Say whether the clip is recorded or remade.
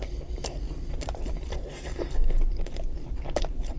remade